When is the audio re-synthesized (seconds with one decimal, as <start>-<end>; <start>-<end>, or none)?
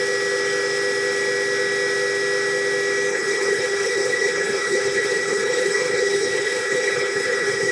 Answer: 3.1-7.7